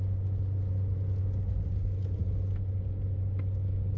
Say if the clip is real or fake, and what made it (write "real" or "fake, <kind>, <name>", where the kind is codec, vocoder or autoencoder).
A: real